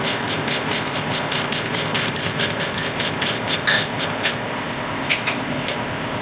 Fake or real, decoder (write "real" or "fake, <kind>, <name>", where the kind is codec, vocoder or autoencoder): fake, codec, ZipCodec